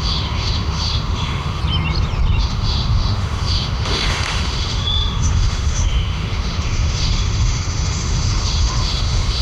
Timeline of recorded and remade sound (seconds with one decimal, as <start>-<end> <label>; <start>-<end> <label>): 0.0-1.6 remade; 1.6-2.4 recorded; 2.4-9.4 remade